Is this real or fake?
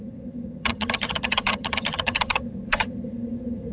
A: fake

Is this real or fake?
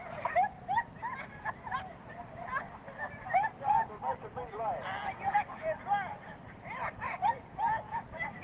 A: real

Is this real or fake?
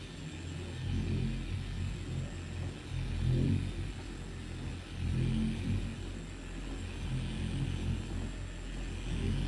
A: real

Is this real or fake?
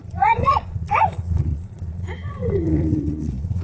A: fake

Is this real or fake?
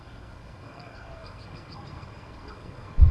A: fake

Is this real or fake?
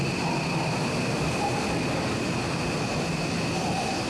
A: real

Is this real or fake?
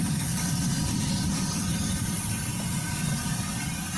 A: fake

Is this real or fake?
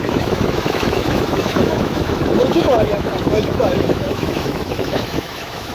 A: fake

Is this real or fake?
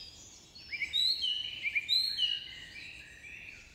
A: real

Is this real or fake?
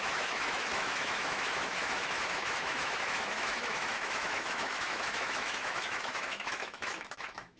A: fake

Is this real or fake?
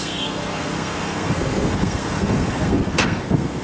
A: fake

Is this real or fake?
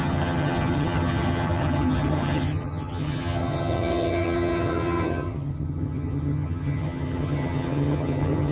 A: fake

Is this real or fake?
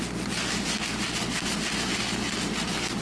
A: real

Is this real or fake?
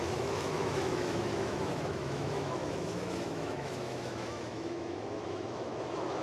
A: fake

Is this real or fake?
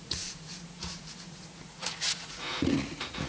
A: fake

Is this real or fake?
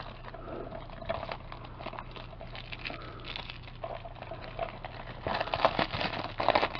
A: real